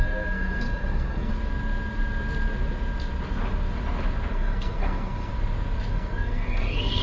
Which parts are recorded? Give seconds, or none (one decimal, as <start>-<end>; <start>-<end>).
1.3-4.3; 5.3-5.9